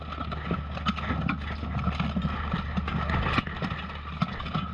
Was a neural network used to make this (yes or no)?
no